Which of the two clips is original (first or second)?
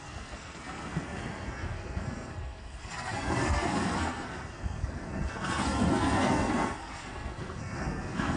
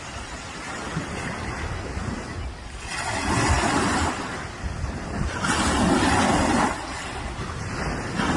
second